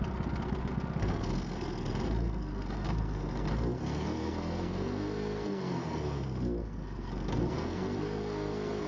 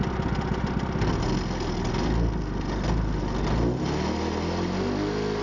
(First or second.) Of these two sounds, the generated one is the first